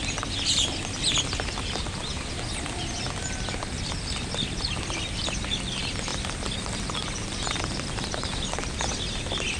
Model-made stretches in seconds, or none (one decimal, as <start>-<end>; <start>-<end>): none